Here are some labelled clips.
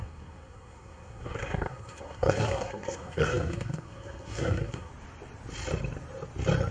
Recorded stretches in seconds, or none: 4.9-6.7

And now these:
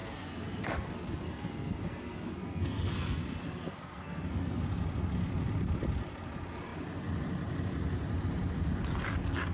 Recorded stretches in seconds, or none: 4.6-9.5

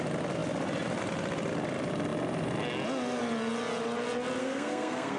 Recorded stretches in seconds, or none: 0.0-4.4

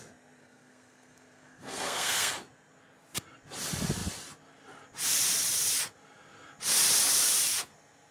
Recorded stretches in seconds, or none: 0.0-0.4; 2.3-8.1

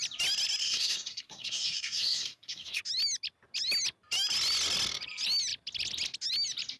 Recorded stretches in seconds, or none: 0.0-0.6; 2.8-6.8

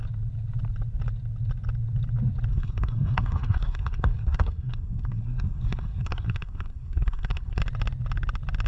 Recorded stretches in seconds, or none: 0.0-2.5; 7.6-8.7

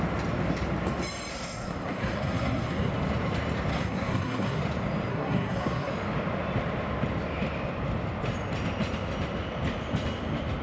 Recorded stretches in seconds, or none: 0.0-1.3; 2.9-3.7; 4.6-5.1; 5.9-10.6